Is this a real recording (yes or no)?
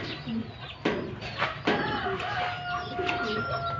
yes